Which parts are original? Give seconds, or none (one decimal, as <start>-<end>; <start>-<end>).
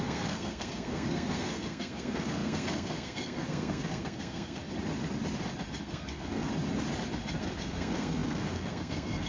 4.6-5.8; 6.5-7.4